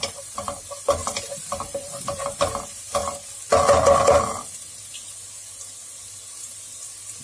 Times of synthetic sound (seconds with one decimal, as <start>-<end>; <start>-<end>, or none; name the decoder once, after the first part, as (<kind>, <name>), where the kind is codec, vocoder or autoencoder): 0.0-3.0 (vocoder, BigVGAN v2)